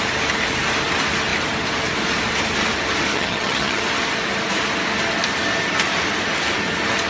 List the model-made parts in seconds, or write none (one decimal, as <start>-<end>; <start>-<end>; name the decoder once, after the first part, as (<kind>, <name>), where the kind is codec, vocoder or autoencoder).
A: 3.1-3.8 (vocoder, HiFi-GAN)